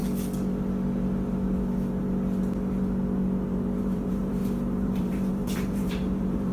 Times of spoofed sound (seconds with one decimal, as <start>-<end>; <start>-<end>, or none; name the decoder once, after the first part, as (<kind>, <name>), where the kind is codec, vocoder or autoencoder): 3.8-6.5 (vocoder, BigVGAN v2)